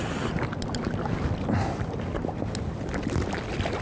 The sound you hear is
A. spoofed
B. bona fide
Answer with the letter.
B